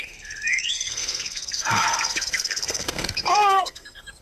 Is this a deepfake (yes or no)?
yes